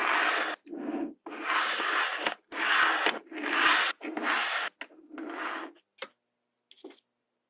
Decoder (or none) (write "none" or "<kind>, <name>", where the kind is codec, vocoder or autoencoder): none